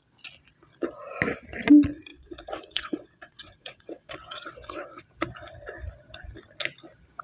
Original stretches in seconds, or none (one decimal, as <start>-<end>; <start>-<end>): 0.0-2.1; 5.0-7.2

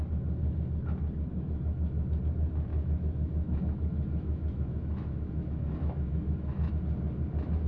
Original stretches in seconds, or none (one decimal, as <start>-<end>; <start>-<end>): 0.0-1.3; 2.2-2.7; 6.7-7.7